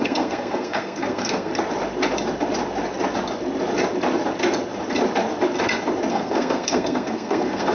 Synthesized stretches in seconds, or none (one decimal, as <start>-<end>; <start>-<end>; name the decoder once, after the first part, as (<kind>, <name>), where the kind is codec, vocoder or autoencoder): 0.0-1.5 (codec, SNAC); 6.1-7.7